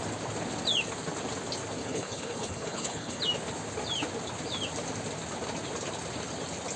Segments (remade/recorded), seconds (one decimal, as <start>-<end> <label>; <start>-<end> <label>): 0.0-1.8 recorded; 1.8-3.2 remade; 3.2-6.8 recorded